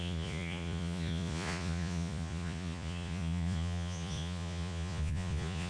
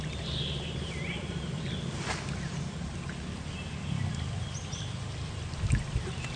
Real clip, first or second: second